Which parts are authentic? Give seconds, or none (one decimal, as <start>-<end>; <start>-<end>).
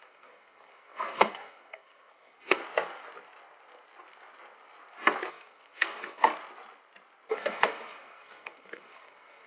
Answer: 2.6-5.3; 6.3-7.3